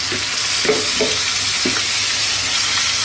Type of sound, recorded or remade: recorded